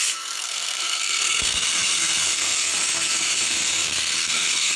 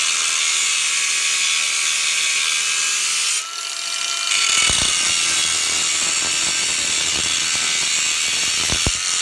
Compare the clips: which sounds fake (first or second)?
first